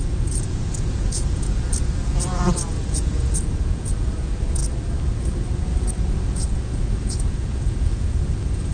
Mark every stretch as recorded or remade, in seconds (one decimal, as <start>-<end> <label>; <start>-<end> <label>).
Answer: 0.0-4.6 remade; 4.6-5.2 recorded; 5.2-5.7 remade; 5.7-6.3 recorded; 6.3-8.7 remade

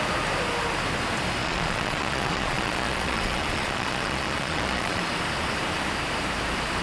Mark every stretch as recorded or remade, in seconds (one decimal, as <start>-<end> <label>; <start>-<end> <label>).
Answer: 0.0-1.4 recorded; 1.4-5.0 remade; 5.0-6.8 recorded

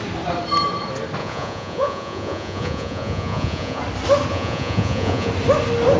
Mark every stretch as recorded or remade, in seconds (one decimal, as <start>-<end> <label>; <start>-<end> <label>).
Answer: 0.0-1.2 recorded; 1.2-3.8 remade; 3.8-4.3 recorded; 4.3-5.3 remade; 5.3-6.0 recorded

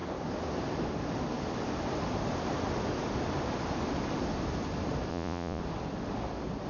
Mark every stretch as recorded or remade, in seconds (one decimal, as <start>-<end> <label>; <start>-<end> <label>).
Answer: 0.0-5.1 recorded; 5.1-5.6 remade; 5.6-6.7 recorded

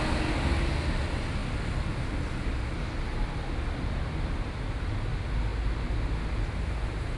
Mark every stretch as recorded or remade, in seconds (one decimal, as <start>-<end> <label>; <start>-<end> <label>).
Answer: 0.0-7.2 recorded

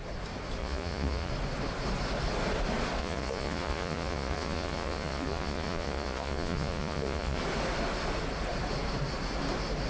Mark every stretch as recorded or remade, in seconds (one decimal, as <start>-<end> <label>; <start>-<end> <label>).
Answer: 0.0-0.6 recorded; 0.6-1.3 remade; 1.3-3.0 recorded; 3.0-7.4 remade; 7.4-9.9 recorded

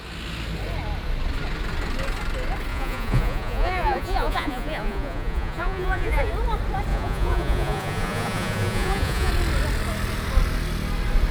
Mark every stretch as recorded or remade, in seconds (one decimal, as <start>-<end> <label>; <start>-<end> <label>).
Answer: 0.0-2.7 recorded; 2.7-6.3 remade; 6.3-6.9 recorded; 6.9-9.3 remade; 9.3-11.3 recorded

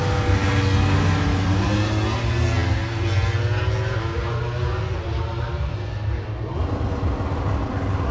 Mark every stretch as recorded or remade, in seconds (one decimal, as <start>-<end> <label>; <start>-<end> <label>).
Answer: 0.0-8.1 recorded